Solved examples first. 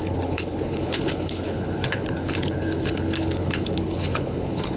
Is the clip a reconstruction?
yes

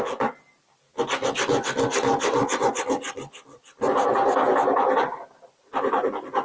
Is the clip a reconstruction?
no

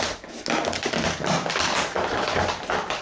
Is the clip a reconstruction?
no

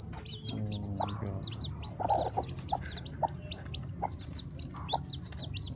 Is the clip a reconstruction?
no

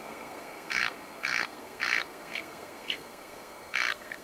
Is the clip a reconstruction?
yes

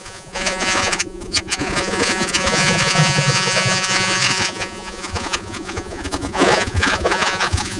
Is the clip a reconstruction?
yes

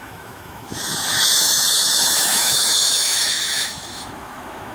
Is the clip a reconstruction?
yes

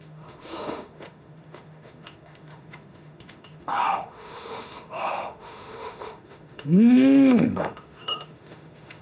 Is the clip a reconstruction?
yes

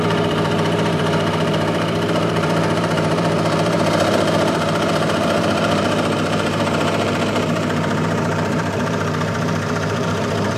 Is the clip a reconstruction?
yes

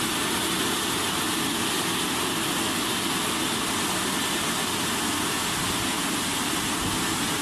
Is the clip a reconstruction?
no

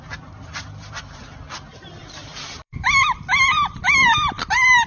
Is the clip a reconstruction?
yes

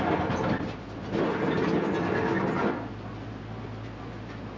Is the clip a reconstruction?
no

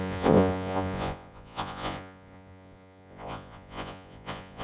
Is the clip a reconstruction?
yes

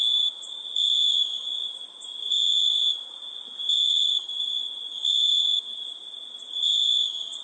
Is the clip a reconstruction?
yes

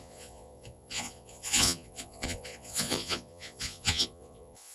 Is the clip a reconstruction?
yes